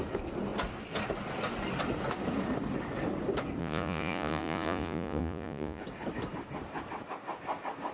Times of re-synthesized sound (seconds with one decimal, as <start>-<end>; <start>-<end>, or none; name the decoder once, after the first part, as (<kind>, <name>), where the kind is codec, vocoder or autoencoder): 3.6-5.8 (vocoder, Vocos)

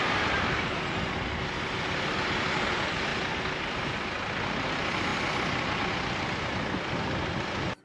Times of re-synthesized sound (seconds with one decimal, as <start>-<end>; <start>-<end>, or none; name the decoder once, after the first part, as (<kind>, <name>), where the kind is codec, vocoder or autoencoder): none

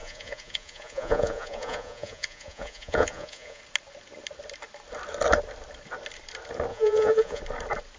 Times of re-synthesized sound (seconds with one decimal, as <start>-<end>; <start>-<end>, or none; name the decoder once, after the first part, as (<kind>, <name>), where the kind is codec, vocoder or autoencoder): 0.0-3.6 (vocoder, Vocos); 6.7-7.4

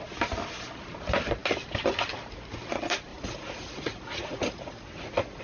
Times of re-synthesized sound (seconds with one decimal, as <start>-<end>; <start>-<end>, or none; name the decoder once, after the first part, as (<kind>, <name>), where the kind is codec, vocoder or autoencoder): 3.1-5.4 (vocoder, Vocos)

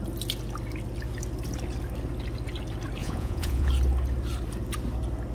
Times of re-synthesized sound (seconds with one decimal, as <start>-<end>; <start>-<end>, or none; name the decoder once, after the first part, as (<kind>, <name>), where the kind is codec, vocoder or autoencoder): 3.0-3.7 (vocoder, Vocos)

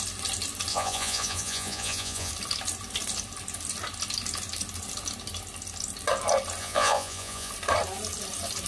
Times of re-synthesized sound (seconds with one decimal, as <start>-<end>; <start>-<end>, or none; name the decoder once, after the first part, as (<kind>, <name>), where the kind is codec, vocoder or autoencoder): 0.7-2.3 (vocoder, Vocos); 6.6-7.5